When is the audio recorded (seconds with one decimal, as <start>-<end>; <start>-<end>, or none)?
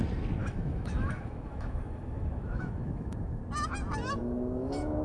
0.0-0.4; 3.4-4.2